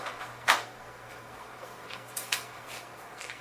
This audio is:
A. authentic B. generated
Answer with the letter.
B